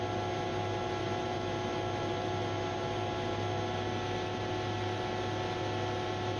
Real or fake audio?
real